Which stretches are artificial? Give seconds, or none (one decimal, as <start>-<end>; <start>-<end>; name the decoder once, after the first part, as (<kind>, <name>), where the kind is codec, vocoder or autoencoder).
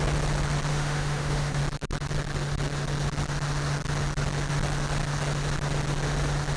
0.7-1.6 (autoencoder, DAC-VAE)